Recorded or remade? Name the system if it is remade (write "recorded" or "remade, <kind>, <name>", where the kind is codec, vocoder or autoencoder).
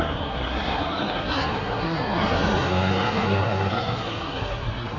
remade, codec, SNAC